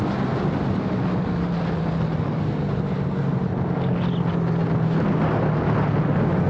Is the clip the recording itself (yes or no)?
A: yes